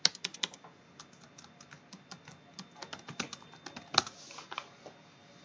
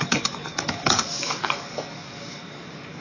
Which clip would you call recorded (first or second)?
first